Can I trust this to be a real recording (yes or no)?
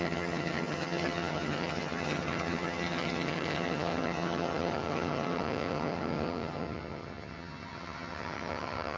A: no